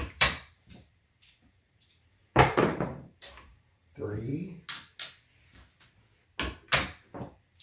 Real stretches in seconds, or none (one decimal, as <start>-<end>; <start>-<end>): 4.3-7.6